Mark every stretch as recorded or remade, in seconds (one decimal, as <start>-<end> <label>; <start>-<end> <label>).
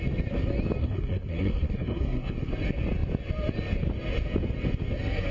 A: 0.0-0.8 recorded; 0.8-2.5 remade; 2.5-5.3 recorded